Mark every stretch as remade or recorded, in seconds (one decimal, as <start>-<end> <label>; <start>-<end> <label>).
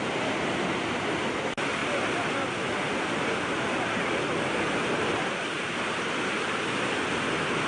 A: 0.0-7.7 recorded